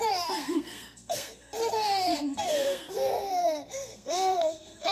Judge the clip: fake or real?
fake